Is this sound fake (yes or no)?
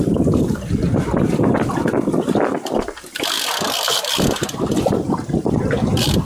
no